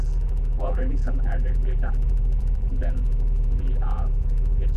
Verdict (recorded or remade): remade